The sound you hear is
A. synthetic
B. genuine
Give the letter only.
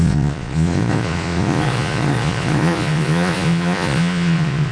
A